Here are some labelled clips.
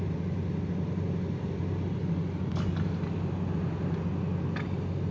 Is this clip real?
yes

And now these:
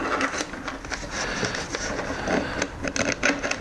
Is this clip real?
yes